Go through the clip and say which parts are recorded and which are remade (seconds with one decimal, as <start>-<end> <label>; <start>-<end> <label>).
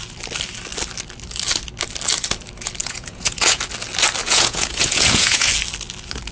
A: 0.0-2.8 recorded; 2.8-3.6 remade; 3.6-4.2 recorded; 4.2-5.5 remade; 5.5-6.3 recorded